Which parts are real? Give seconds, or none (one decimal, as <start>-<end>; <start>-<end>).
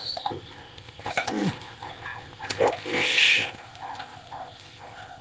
none